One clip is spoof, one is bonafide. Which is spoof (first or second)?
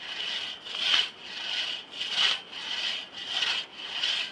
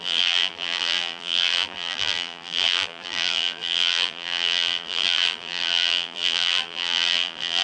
second